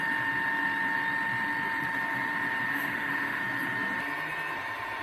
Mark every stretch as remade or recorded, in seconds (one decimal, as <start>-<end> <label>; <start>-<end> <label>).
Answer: 0.0-2.7 recorded; 2.7-3.4 remade; 3.4-5.0 recorded